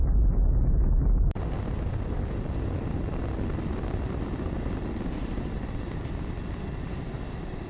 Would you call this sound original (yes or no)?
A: yes